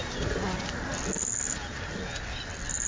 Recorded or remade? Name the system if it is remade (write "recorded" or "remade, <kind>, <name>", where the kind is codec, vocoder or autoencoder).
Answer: recorded